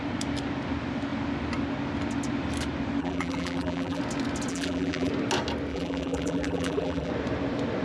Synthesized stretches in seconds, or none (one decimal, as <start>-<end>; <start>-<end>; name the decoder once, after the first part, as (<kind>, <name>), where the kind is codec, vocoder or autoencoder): 3.0-4.0 (vocoder, BigVGAN v2); 4.5-5.1; 5.7-7.1